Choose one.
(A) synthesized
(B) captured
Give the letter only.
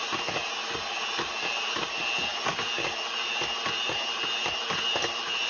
B